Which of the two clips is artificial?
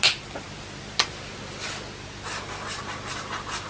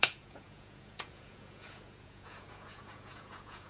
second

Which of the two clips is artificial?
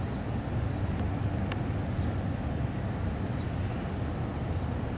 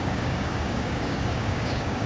second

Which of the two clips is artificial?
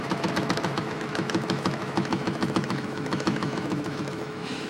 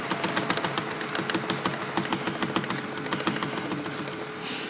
first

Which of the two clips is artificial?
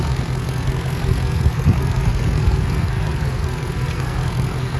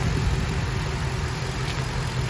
first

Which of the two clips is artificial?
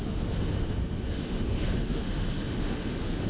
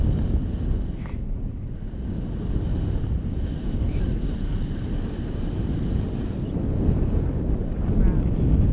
first